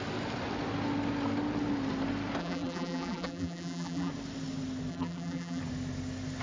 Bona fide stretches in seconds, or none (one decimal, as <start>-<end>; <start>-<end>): 0.0-2.4; 4.1-4.9; 5.6-6.4